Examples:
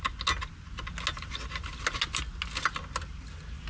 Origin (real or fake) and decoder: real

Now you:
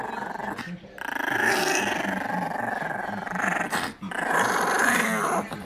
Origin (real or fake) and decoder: real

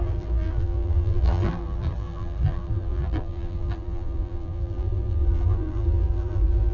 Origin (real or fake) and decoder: fake, vocoder, BigVGAN v2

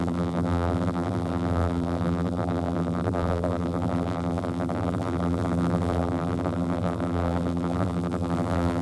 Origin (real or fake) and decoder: fake, vocoder, BigVGAN v2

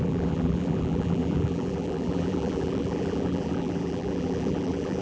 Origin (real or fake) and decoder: fake, vocoder, BigVGAN v2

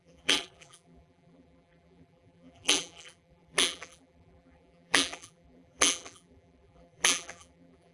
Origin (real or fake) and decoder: fake, vocoder, BigVGAN v2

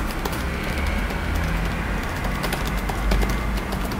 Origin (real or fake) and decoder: real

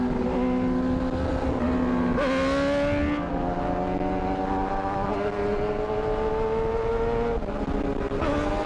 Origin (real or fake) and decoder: real